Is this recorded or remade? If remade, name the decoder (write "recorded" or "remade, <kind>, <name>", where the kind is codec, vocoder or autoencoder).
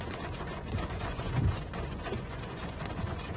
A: remade, vocoder, Vocos